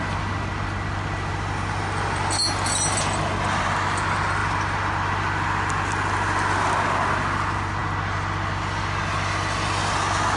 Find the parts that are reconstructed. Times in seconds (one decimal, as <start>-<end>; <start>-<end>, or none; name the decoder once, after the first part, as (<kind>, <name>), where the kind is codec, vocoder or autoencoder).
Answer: none